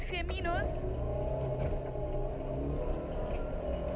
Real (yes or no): yes